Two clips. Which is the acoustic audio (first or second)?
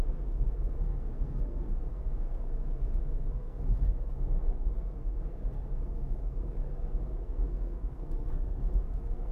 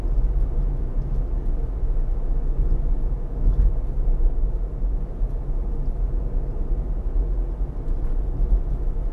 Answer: second